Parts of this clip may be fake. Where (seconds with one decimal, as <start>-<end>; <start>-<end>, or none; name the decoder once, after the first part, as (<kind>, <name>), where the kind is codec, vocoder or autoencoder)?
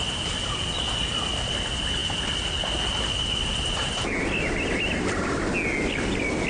none